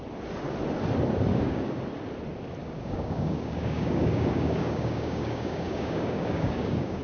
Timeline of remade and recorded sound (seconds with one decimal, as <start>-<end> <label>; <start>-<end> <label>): 0.0-1.3 recorded; 1.3-1.8 remade; 1.8-2.6 recorded; 2.6-7.0 remade